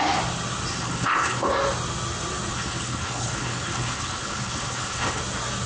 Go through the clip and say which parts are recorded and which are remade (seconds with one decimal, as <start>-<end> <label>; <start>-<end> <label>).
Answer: 0.0-0.7 recorded; 0.7-1.5 remade; 1.5-2.5 recorded; 2.5-5.2 remade; 5.2-5.7 recorded